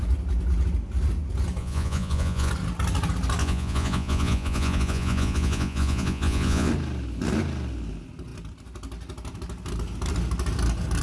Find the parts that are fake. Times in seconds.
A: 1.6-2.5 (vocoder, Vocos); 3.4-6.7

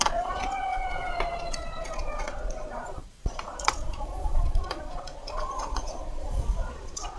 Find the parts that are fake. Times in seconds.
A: 0.0-7.2 (vocoder, Vocos)

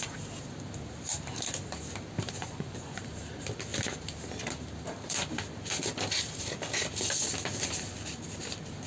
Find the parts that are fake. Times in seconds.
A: 2.4-3.0 (vocoder, Vocos)

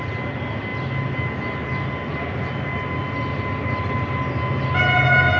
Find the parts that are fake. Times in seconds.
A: none